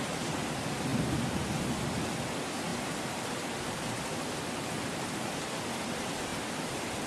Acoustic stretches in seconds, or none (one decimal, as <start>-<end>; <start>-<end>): 0.0-7.1